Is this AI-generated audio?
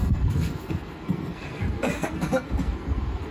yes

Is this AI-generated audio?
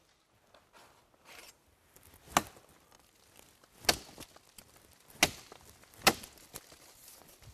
no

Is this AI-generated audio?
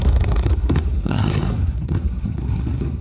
yes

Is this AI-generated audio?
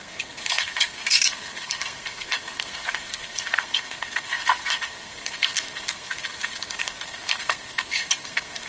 yes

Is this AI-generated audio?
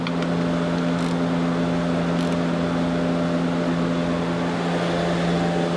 no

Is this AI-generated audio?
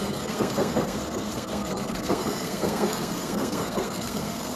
yes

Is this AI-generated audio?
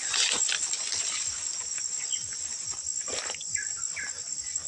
no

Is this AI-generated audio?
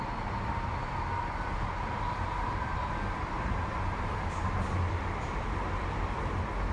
no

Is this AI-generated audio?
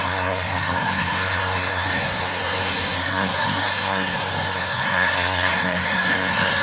yes